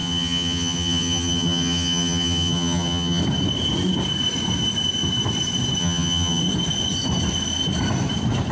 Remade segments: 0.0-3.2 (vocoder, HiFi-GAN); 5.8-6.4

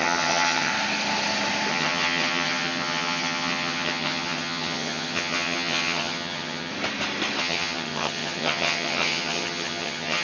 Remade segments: 0.0-0.7 (vocoder, HiFi-GAN); 1.7-6.7; 7.4-10.2

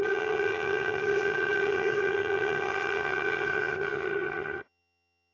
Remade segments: 0.0-5.3 (vocoder, HiFi-GAN)

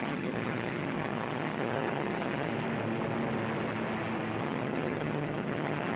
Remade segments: 0.0-2.5 (vocoder, HiFi-GAN); 4.4-6.0